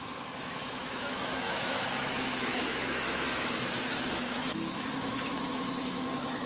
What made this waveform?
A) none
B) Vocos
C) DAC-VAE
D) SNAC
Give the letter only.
C